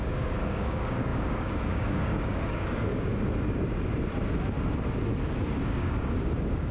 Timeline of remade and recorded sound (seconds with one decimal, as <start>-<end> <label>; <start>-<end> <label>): 0.0-3.1 remade; 3.1-5.6 recorded; 5.6-6.7 remade